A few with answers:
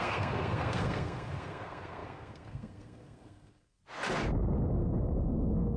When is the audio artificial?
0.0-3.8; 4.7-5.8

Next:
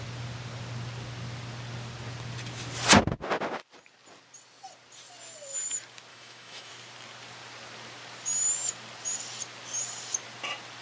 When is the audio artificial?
6.1-6.7

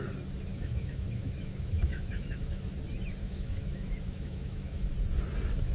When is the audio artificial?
0.5-2.7; 3.2-4.9

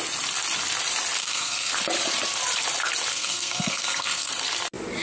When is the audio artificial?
1.2-1.7; 3.1-4.3